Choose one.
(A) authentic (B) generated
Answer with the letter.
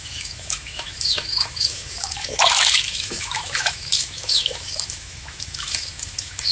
B